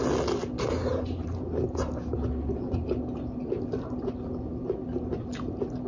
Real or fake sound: real